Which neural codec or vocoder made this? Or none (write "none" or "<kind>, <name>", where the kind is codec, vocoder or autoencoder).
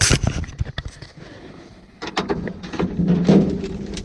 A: vocoder, BigVGAN v2